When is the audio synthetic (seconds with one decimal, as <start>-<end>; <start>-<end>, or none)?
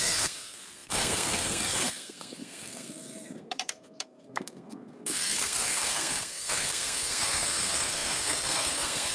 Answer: 0.0-9.1